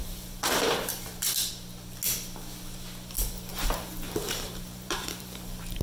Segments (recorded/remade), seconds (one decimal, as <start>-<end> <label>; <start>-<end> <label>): 0.0-1.5 remade; 1.5-3.5 recorded; 3.5-5.8 remade